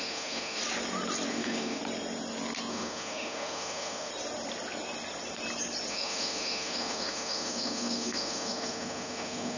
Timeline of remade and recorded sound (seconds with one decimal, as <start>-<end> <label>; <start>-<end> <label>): 0.0-0.6 remade; 0.6-1.3 recorded; 1.3-1.8 remade; 1.8-2.7 recorded; 2.7-4.1 remade; 4.1-5.9 recorded; 5.9-9.6 remade

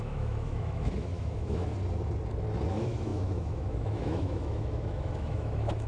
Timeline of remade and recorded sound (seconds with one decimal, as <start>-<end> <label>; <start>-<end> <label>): 0.0-1.7 remade; 1.7-2.7 recorded; 2.7-5.9 remade

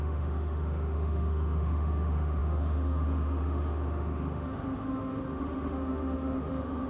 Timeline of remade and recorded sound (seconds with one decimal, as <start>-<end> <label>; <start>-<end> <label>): 0.0-6.9 remade

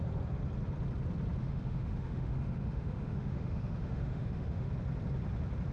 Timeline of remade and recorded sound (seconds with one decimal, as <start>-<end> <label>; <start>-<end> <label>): 0.0-1.4 recorded; 1.4-4.7 remade; 4.7-5.7 recorded

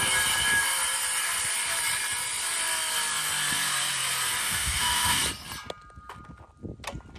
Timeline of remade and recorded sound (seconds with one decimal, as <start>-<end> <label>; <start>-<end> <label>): 0.0-4.4 recorded; 4.4-5.2 remade; 5.2-7.2 recorded

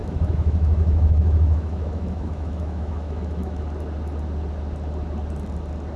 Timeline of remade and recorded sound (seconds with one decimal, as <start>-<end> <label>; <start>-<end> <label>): 0.0-3.6 remade; 3.6-6.0 recorded

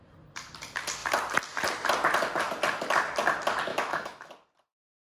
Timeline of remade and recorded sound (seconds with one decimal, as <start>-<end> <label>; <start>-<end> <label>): 0.0-3.7 recorded; 3.7-4.3 remade; 4.3-5.1 recorded

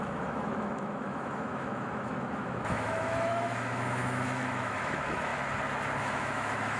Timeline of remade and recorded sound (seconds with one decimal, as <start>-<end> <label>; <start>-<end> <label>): 0.0-5.3 remade; 5.3-6.0 recorded; 6.0-6.8 remade